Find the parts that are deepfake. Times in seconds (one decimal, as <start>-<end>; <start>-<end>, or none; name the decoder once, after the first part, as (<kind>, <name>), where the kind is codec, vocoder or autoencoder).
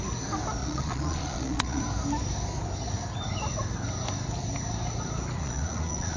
0.6-1.8 (vocoder, Vocos); 5.4-6.2